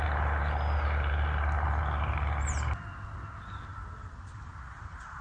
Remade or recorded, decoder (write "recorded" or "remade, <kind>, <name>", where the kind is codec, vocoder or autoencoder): recorded